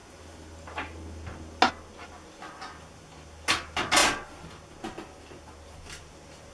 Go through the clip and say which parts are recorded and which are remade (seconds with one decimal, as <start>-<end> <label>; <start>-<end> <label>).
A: 0.0-6.5 recorded